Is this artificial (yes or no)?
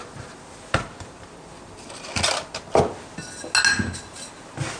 no